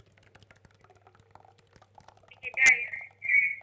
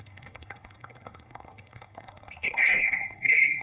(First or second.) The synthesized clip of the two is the second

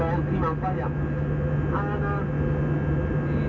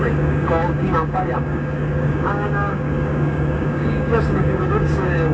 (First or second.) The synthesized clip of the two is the second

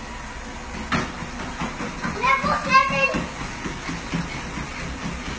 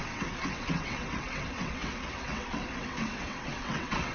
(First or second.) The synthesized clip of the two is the second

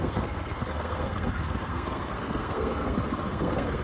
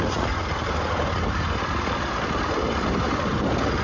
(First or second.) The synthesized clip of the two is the first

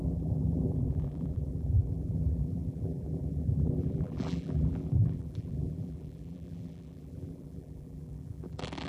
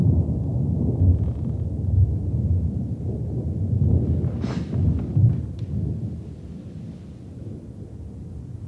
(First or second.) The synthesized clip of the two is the first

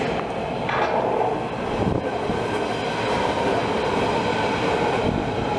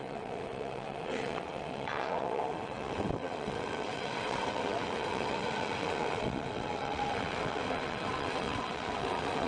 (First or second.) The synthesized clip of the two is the second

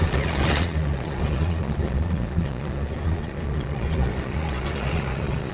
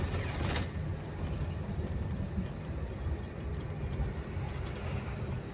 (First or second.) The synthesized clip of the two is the first